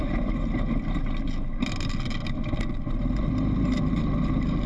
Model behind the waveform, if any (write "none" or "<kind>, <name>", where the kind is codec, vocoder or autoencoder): none